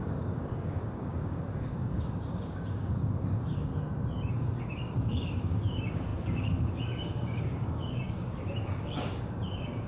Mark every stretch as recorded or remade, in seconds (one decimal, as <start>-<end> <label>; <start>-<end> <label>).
0.0-3.7 remade; 3.7-4.3 recorded; 4.3-9.9 remade